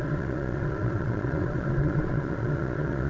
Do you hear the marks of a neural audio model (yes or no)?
yes